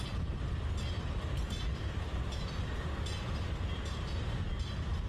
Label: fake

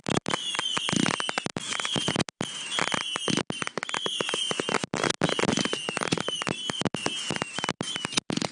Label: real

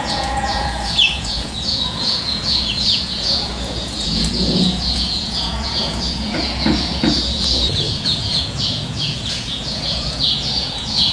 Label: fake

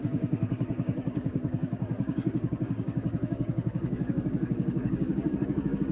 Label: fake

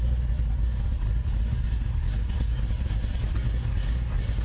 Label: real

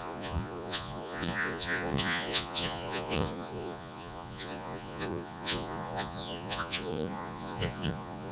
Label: fake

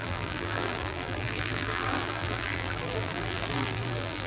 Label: fake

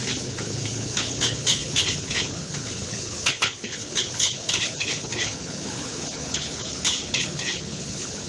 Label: fake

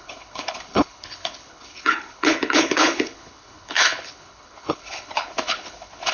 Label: fake